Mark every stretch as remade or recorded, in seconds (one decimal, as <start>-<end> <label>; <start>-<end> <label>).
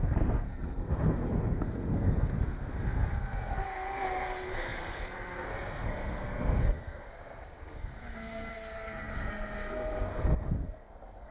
0.0-11.3 remade